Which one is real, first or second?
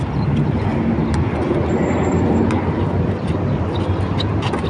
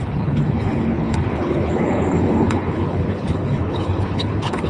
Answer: first